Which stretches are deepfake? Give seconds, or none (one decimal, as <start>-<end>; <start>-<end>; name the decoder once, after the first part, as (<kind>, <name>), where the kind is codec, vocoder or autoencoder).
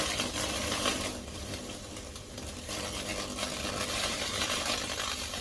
0.0-3.1 (vocoder, BigVGAN v2); 3.9-5.4